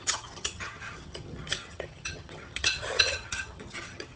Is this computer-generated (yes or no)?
yes